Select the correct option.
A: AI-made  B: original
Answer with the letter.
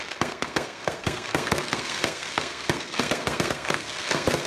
A